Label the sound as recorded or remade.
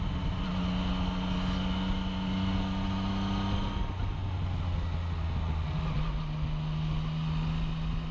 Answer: recorded